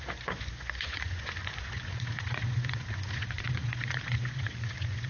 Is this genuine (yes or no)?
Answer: no